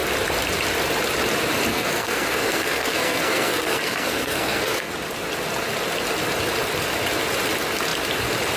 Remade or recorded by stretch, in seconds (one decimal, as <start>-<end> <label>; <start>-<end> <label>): 0.0-1.7 recorded; 1.7-4.9 remade; 4.9-8.6 recorded